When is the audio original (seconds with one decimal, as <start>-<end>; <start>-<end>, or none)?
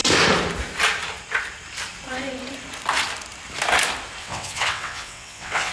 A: 0.0-4.2